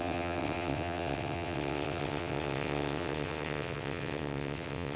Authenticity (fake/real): fake